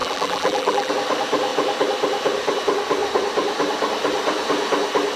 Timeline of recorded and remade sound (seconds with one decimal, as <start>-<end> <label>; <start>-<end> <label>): 0.0-0.9 remade; 0.9-5.2 recorded